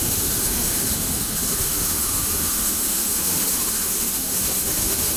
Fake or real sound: fake